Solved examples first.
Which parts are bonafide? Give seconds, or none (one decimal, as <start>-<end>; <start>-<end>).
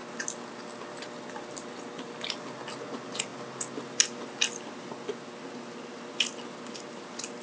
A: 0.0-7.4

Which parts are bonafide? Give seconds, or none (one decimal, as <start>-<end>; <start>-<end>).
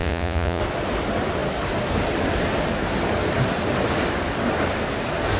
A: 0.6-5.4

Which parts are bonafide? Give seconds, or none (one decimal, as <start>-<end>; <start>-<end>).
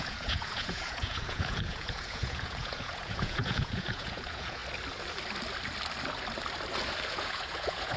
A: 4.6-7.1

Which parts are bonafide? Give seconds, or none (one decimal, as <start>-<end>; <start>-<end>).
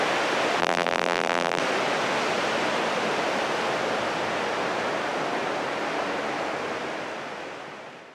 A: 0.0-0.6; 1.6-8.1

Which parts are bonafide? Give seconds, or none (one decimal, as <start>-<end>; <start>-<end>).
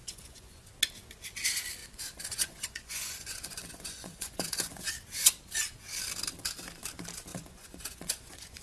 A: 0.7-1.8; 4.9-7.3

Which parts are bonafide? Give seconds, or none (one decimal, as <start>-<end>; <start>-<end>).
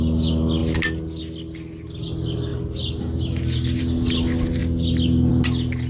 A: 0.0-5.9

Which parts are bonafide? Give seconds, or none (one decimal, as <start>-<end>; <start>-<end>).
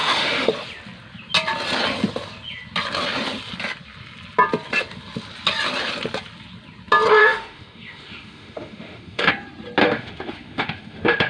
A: 0.5-7.2; 9.3-9.8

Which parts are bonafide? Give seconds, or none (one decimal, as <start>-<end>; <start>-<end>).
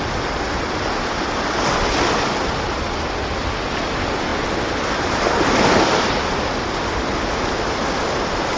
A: 0.0-8.6